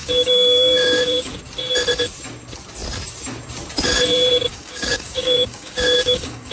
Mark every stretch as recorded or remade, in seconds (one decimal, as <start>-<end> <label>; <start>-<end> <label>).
0.0-1.3 remade; 1.3-4.5 recorded; 4.5-6.5 remade